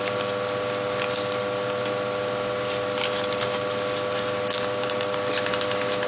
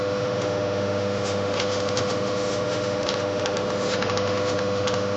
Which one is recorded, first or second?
first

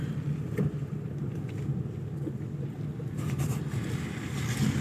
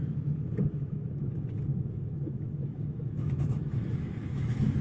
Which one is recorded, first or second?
first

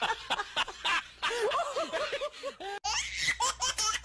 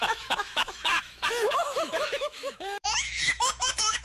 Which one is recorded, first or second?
first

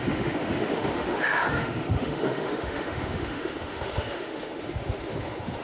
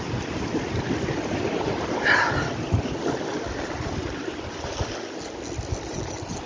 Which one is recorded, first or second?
second